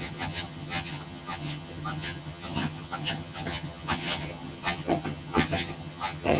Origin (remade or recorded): remade